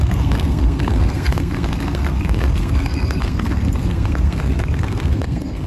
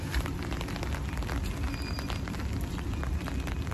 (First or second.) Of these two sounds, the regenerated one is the first